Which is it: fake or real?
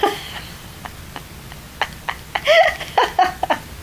real